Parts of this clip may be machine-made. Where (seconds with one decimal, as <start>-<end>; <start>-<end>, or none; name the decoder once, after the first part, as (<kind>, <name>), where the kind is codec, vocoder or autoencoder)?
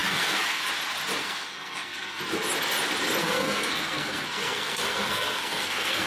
0.0-0.7 (codec, SNAC); 1.2-2.2; 3.2-6.1